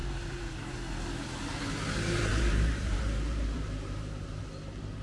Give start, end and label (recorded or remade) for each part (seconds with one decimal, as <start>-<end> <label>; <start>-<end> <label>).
0.0-0.7 remade; 0.7-2.3 recorded; 2.3-4.4 remade; 4.4-5.0 recorded